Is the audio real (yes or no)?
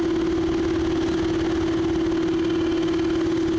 yes